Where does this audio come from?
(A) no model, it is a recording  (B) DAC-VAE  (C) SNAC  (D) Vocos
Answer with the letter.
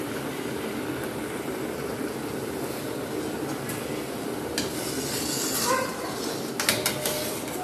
A